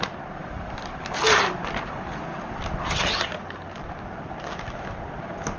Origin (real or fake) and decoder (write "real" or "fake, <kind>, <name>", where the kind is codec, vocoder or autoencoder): real